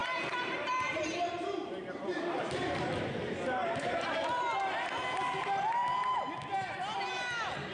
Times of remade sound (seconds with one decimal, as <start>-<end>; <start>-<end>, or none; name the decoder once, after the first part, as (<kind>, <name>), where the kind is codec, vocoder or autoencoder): 0.0-4.6 (vocoder, BigVGAN v2)